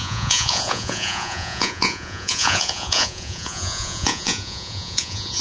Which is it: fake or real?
fake